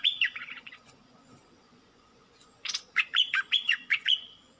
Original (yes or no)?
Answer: no